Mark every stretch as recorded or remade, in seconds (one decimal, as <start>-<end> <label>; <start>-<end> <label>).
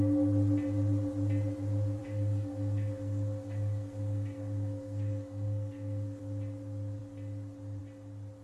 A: 0.0-2.0 recorded; 2.0-6.2 remade; 6.2-8.4 recorded